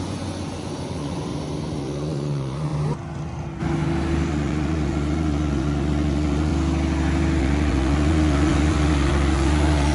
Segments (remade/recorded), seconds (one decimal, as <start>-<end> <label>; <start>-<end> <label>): 0.0-1.3 remade; 1.3-1.8 recorded; 1.8-2.7 remade; 2.7-4.3 recorded; 4.3-6.5 remade; 6.5-7.4 recorded; 7.4-9.9 remade

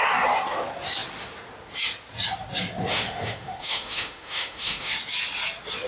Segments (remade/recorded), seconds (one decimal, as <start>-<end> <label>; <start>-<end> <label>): 0.0-2.9 recorded; 2.9-4.9 remade; 4.9-5.9 recorded

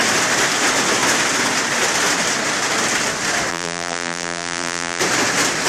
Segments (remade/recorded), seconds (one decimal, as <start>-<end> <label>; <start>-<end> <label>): 0.0-3.5 recorded; 3.5-5.0 remade; 5.0-5.7 recorded

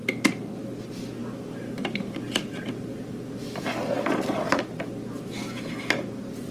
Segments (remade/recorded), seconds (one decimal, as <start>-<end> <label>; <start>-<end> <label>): 0.0-1.2 recorded; 1.2-4.5 remade; 4.5-6.5 recorded

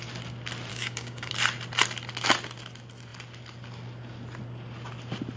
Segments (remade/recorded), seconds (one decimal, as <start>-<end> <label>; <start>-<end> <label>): 0.0-0.7 recorded; 0.7-1.3 remade; 1.3-5.4 recorded

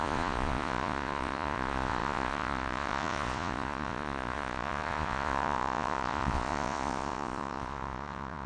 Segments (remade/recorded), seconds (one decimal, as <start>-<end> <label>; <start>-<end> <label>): 0.0-8.5 remade

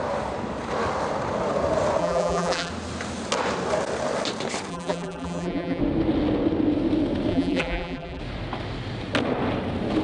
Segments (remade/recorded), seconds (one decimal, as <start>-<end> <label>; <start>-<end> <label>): 0.0-2.0 recorded; 2.0-2.7 remade; 2.7-4.7 recorded; 4.7-5.8 remade; 5.8-7.3 recorded; 7.3-8.2 remade; 8.2-10.0 recorded